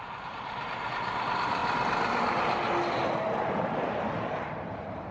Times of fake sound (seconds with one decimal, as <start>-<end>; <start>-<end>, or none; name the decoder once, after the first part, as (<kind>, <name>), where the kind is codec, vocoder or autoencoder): 0.0-1.6 (vocoder, BigVGAN v2); 3.5-5.1